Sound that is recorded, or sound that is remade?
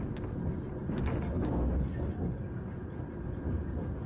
recorded